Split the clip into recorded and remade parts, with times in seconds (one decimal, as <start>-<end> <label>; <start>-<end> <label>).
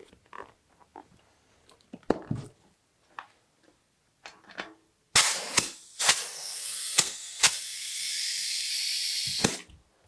0.0-6.3 recorded; 6.3-8.7 remade; 8.7-10.1 recorded